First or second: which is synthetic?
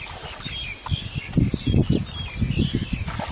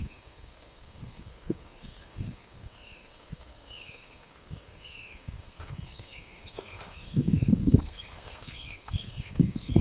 second